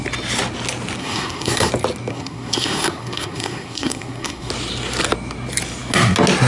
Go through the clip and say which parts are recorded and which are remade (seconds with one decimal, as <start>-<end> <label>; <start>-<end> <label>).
0.0-1.0 recorded; 1.0-1.7 remade; 1.7-2.1 recorded; 2.1-4.5 remade; 4.5-6.5 recorded